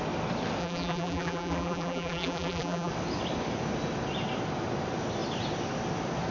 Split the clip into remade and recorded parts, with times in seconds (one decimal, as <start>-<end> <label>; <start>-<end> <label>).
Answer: 0.0-0.6 recorded; 0.6-2.9 remade; 2.9-6.3 recorded